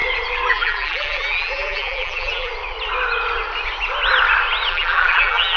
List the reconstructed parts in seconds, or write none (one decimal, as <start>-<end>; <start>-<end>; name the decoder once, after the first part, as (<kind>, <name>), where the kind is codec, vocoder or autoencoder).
0.5-2.5 (vocoder, BigVGAN v2); 4.7-5.6